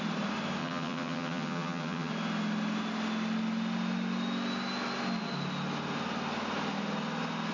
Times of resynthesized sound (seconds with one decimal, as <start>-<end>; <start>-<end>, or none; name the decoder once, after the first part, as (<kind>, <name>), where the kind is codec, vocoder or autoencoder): 0.6-2.1 (vocoder, HiFi-GAN)